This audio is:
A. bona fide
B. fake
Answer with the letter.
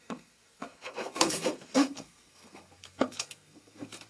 B